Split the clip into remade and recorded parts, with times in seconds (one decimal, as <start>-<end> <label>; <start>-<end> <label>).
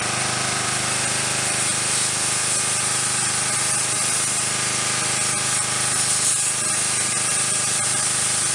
0.0-2.4 remade; 2.4-7.1 recorded; 7.1-8.5 remade